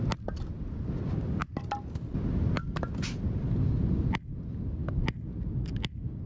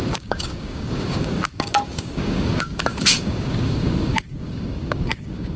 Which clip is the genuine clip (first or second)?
first